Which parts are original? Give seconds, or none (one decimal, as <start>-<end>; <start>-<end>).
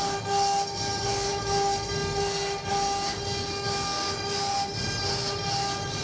0.0-6.0